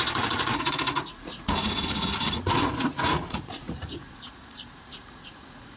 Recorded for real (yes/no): no